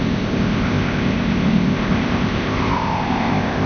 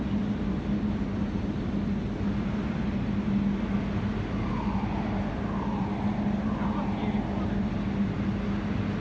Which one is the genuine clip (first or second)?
second